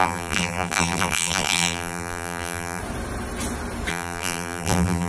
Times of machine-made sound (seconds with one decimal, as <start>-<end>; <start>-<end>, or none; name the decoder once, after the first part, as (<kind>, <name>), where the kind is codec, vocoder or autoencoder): 0.0-2.8 (vocoder, BigVGAN v2); 3.9-5.1